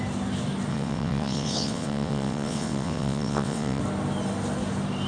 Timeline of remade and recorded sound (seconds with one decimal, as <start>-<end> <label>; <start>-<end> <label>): 0.0-0.7 recorded; 0.7-3.8 remade; 3.8-5.1 recorded